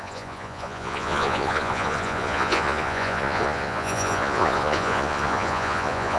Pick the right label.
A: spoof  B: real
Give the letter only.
A